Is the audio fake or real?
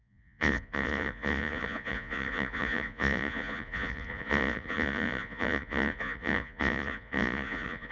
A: fake